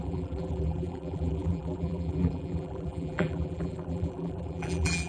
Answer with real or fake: fake